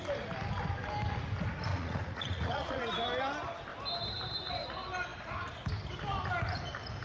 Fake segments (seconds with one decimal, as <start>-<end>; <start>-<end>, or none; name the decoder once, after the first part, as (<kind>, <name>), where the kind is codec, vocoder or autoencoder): 1.7-2.8 (vocoder, Vocos)